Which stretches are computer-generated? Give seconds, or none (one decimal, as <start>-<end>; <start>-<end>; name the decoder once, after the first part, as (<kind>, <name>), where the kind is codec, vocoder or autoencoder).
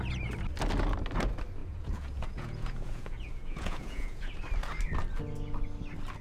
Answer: 1.6-4.3 (vocoder, Vocos)